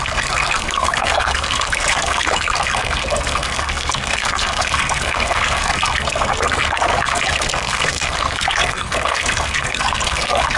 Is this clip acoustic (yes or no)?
no